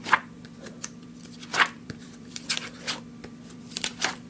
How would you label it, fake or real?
fake